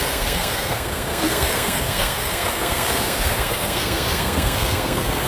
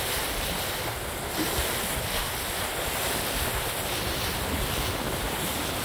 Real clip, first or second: second